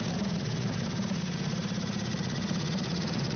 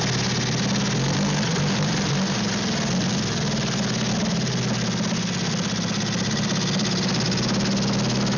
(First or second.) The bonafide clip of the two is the second